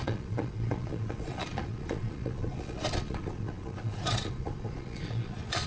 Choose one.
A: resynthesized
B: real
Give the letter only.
A